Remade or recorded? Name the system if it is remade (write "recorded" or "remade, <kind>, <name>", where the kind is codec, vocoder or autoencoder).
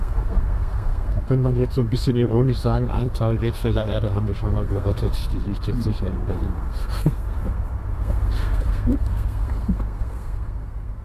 remade, codec, SNAC